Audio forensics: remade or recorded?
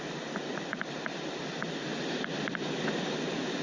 recorded